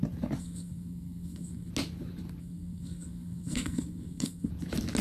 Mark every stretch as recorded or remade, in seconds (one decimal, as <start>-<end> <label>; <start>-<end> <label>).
0.0-0.4 recorded; 0.4-1.7 remade; 1.7-2.4 recorded; 2.4-4.5 remade; 4.5-5.0 recorded